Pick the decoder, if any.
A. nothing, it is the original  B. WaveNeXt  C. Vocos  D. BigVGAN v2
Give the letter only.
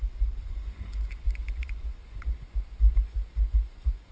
C